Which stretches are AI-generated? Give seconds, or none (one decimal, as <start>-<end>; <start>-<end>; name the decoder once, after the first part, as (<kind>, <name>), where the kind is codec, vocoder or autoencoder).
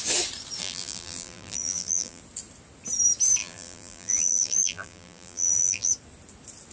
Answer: 0.6-2.2 (vocoder, BigVGAN v2); 3.4-5.9